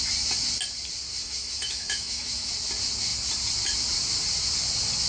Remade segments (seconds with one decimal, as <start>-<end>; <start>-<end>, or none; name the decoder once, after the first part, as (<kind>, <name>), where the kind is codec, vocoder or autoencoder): 1.1-2.5 (autoencoder, DAC-VAE)

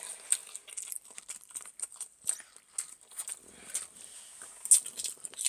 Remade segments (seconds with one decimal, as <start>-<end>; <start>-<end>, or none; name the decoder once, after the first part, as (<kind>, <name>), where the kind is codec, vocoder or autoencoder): none

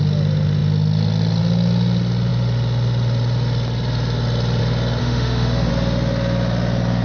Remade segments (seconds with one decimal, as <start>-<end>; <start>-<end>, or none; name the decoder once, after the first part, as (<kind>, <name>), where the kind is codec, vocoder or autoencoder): 5.0-5.7 (autoencoder, DAC-VAE)

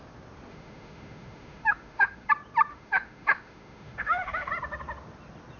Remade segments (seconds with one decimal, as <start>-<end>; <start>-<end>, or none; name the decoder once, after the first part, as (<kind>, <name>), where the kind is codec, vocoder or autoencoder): 0.5-2.3 (autoencoder, DAC-VAE); 2.7-4.5

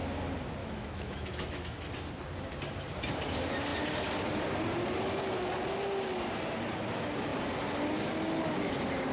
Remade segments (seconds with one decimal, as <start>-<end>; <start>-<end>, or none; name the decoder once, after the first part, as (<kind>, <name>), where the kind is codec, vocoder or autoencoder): 0.6-1.9 (autoencoder, DAC-VAE)

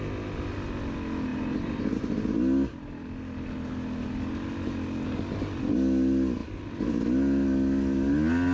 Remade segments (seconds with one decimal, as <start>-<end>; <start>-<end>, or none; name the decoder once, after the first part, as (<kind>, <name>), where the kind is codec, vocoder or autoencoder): none

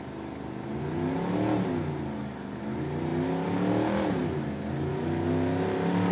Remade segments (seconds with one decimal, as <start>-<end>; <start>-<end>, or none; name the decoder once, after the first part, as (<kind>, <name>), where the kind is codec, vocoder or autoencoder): none

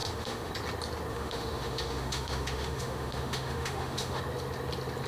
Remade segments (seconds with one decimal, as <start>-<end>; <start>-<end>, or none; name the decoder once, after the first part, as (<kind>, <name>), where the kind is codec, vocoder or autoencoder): 0.0-0.5 (autoencoder, DAC-VAE); 1.1-4.2